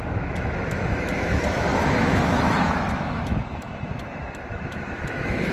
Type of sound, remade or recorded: remade